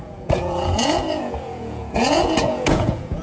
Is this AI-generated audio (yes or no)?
yes